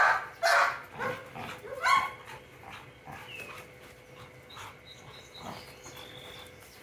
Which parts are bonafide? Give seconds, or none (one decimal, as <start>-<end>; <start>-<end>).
0.0-6.8